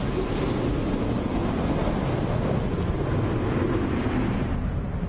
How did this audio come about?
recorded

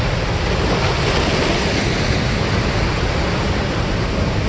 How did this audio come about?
recorded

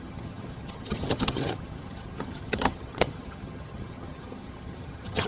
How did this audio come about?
remade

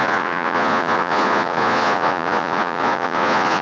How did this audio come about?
remade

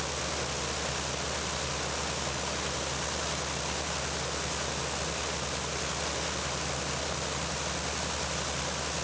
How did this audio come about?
recorded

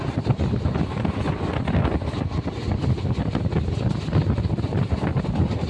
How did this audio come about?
recorded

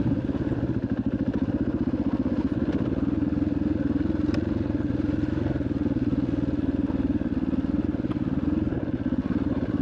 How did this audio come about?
recorded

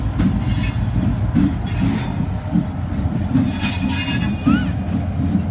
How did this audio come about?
recorded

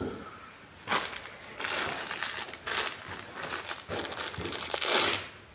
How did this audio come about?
recorded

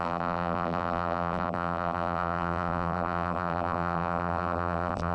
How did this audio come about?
remade